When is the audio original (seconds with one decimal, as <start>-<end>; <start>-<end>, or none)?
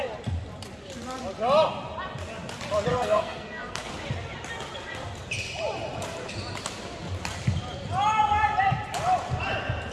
0.0-2.9; 3.9-9.9